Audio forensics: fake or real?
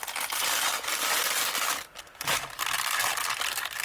real